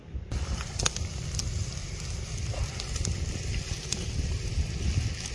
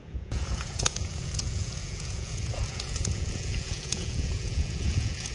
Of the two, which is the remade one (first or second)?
second